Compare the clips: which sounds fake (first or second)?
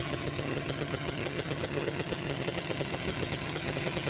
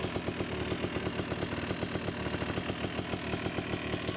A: first